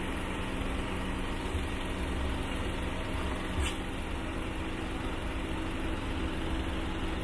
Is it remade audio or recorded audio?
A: recorded